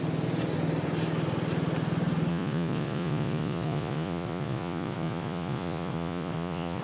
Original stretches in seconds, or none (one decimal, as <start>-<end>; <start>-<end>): 0.0-2.3